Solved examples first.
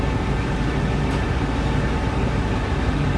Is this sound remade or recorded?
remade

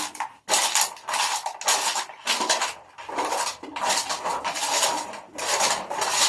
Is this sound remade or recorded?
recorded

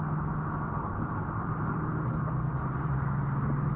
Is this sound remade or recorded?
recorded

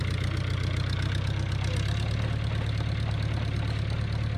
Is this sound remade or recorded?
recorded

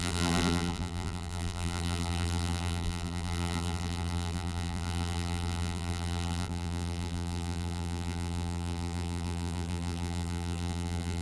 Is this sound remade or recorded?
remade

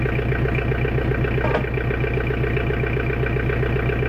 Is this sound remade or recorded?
recorded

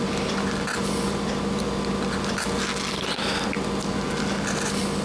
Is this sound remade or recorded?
recorded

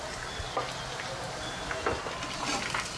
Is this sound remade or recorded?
recorded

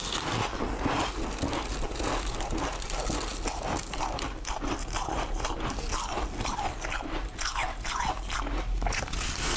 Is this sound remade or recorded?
recorded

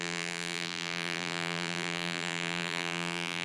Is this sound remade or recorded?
remade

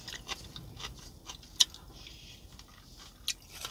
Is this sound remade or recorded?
recorded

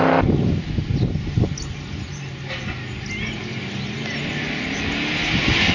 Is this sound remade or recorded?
recorded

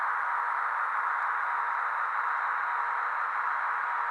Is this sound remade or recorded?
remade